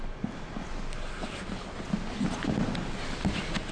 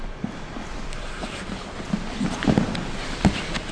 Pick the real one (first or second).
first